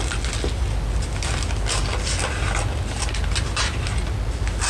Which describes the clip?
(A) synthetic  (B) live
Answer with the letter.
B